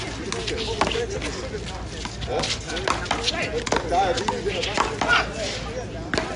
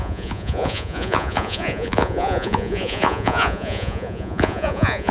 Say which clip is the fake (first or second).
second